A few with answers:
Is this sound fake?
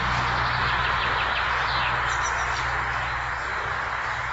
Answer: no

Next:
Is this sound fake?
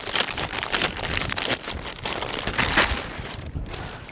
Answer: yes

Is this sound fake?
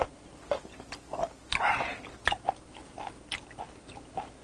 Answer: no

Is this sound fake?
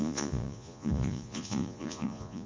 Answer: yes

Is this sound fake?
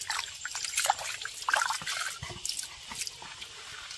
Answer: no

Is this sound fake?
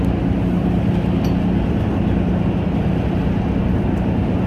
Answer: no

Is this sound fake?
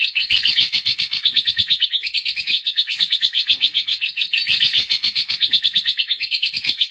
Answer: yes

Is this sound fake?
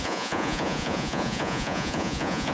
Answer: yes